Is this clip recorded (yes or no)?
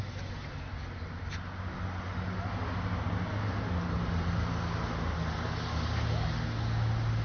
yes